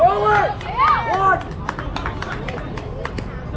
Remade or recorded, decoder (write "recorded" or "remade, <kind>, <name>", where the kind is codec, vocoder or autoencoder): recorded